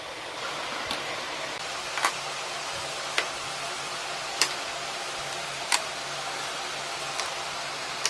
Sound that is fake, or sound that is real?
real